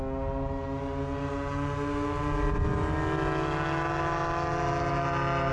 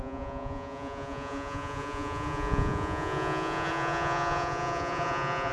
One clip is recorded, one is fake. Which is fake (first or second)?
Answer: second